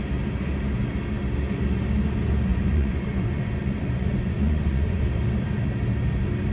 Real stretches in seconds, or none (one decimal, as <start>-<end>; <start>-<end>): 0.0-2.5; 5.0-6.5